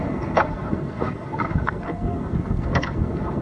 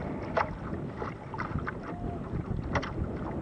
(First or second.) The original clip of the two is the second